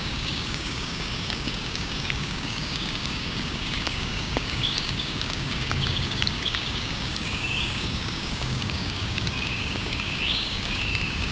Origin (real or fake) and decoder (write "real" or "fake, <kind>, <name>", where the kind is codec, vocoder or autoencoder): fake, codec, DAC